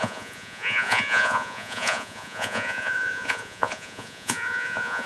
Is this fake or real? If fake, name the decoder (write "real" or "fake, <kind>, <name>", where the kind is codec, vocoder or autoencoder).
fake, vocoder, Vocos